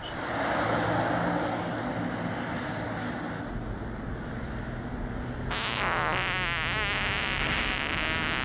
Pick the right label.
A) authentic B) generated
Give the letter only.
A